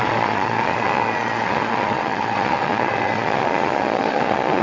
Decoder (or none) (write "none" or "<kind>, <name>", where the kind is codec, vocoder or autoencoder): vocoder, Vocos